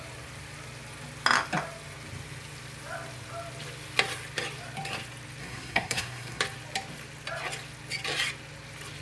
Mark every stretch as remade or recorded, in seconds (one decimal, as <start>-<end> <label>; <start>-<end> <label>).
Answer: 0.0-5.4 recorded; 5.4-6.4 remade; 6.4-9.0 recorded